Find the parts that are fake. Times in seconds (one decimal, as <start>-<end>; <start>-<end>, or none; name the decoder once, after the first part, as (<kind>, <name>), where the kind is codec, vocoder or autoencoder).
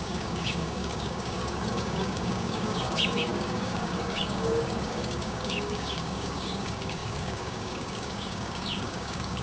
0.0-9.4 (codec, DAC)